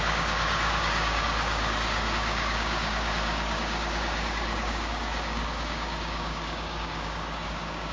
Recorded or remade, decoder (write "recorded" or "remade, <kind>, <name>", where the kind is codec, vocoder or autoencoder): remade, codec, DAC